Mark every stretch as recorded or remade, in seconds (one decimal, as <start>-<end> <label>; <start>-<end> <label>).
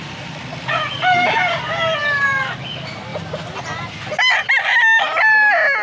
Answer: 0.0-2.0 recorded; 2.0-2.7 remade; 2.7-5.8 recorded